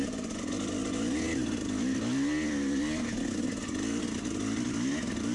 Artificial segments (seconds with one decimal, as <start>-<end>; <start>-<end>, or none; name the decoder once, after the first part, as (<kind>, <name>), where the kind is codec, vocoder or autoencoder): none